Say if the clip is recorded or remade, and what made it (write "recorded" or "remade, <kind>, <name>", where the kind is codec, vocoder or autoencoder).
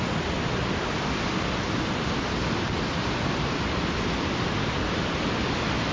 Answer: recorded